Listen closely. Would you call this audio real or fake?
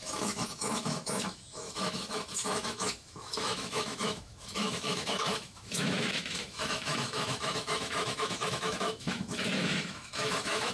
fake